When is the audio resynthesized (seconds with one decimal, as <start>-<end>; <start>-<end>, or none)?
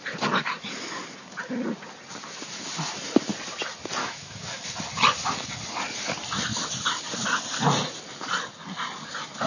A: 4.0-4.6